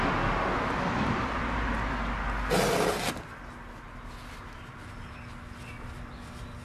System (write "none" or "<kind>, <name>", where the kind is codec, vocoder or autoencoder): none